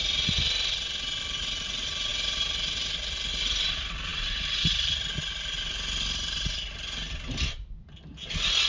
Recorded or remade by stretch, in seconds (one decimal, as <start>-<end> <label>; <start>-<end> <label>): 0.0-8.7 recorded